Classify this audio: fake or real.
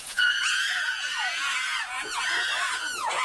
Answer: fake